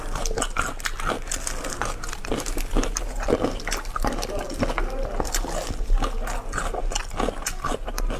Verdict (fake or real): real